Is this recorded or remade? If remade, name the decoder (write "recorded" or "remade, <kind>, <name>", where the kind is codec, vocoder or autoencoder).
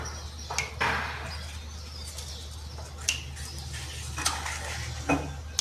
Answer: recorded